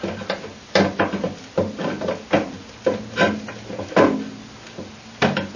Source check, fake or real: real